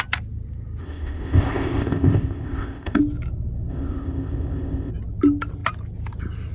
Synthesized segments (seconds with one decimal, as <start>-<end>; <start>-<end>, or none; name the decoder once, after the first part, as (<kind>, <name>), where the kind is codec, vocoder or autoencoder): 0.8-3.0 (codec, ZipCodec); 3.7-4.9